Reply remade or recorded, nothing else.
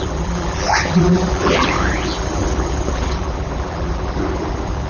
remade